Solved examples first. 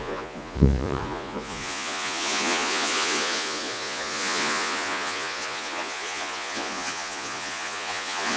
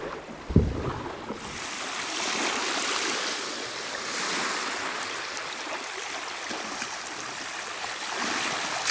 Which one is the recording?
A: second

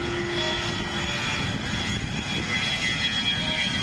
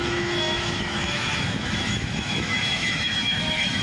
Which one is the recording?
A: first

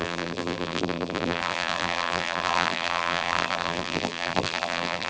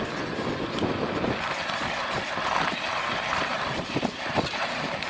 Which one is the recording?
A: second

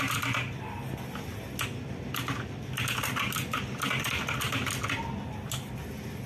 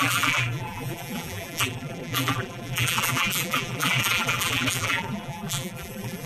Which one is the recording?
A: first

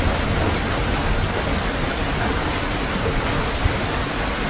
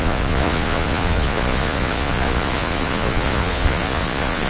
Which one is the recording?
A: first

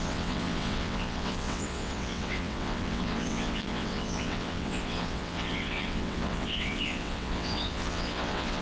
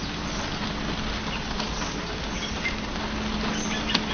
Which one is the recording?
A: second